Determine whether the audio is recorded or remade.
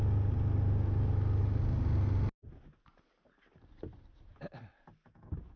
recorded